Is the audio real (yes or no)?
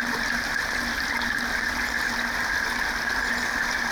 yes